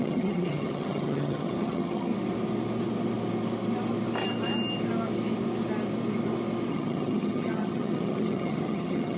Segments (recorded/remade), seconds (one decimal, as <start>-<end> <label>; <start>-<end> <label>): 0.0-2.1 remade; 2.1-6.7 recorded; 6.7-9.2 remade